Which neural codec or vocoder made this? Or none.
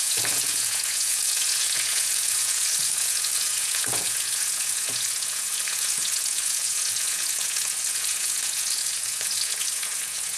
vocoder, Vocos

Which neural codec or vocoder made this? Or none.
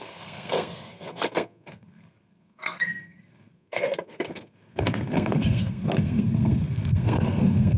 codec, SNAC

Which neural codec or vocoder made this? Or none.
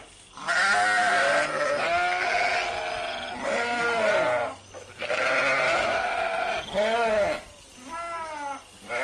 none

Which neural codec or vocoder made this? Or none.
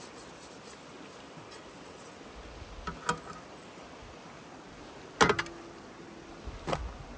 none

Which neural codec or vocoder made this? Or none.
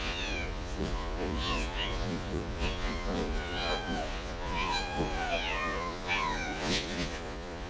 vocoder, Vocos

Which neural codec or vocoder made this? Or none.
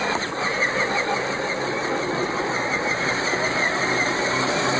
none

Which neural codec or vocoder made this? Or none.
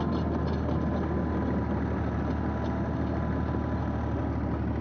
none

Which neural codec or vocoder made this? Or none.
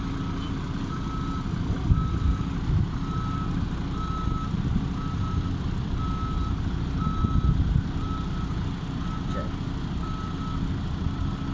none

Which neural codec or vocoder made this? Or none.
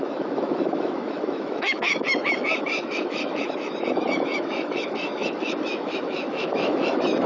autoencoder, DAC-VAE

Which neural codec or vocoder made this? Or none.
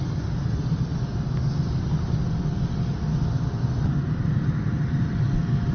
none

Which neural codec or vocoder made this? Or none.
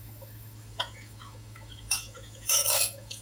autoencoder, DAC-VAE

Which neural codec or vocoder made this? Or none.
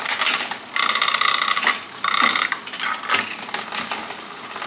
none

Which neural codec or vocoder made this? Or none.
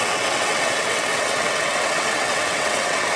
vocoder, WaveNeXt